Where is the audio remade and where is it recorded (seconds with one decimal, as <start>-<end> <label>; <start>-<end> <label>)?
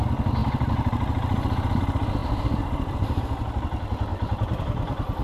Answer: 0.0-2.2 recorded; 2.2-3.2 remade; 3.2-4.1 recorded; 4.1-4.6 remade; 4.6-5.2 recorded